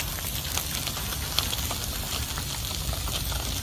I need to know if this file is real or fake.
real